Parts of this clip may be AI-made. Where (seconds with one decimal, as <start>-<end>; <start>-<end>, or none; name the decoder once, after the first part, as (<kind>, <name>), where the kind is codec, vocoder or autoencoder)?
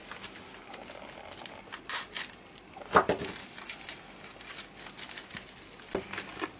none